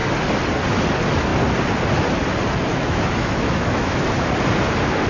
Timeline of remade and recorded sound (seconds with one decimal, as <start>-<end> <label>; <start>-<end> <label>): 0.0-2.7 recorded; 2.7-4.0 remade; 4.0-5.1 recorded